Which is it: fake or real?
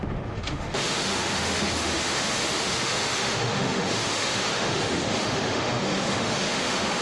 fake